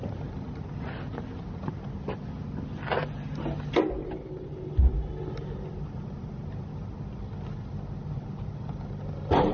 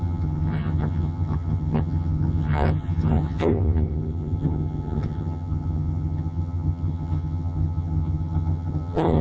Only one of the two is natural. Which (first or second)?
first